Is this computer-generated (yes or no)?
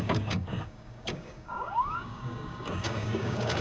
yes